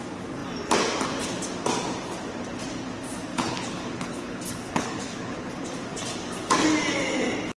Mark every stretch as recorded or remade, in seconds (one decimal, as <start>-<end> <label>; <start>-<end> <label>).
0.0-3.3 recorded; 3.3-5.5 remade; 5.5-7.6 recorded